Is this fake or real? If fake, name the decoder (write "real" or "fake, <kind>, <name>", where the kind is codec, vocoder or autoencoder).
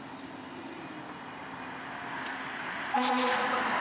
real